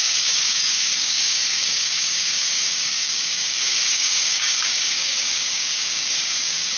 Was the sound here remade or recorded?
remade